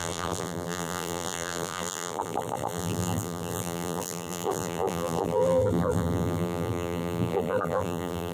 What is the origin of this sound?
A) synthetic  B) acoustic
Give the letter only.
A